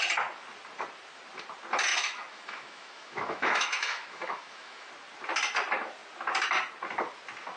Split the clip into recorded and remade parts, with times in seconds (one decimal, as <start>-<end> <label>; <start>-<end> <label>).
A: 0.0-1.9 recorded; 1.9-4.9 remade; 4.9-7.6 recorded